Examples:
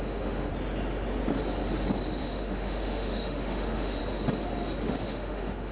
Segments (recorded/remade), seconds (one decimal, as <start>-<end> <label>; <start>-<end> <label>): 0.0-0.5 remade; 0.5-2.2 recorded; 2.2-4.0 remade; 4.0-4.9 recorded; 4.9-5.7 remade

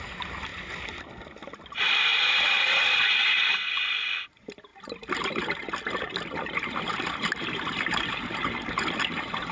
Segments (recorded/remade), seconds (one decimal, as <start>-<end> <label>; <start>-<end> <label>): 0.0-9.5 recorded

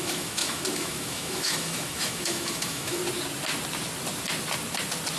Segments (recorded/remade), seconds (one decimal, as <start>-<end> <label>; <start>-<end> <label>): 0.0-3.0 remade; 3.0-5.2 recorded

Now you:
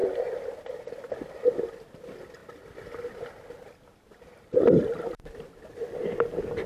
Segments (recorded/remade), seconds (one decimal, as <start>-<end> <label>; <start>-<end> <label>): 0.0-6.7 recorded